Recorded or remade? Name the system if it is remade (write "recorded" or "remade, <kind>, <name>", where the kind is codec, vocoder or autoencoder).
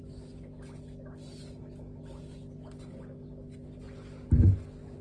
recorded